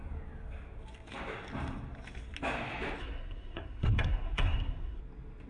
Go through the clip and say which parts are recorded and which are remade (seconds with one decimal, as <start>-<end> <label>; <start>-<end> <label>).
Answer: 0.0-3.0 recorded; 3.0-5.0 remade; 5.0-5.5 recorded